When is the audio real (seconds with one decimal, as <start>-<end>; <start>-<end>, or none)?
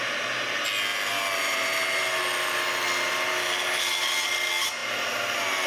0.0-5.7